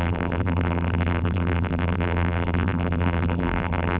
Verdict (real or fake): fake